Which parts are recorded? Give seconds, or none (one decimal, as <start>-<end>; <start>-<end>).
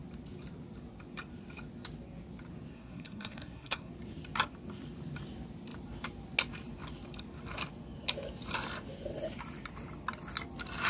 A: 0.0-2.7; 3.9-10.9